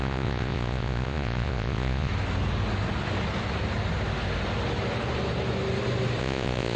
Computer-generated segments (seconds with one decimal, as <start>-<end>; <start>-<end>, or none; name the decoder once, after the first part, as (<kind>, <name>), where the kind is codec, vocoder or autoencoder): 0.0-2.1 (vocoder, Vocos); 6.2-6.8